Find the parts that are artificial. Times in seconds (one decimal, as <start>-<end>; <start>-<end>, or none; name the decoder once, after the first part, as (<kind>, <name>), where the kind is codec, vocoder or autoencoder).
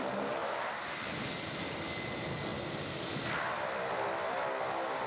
none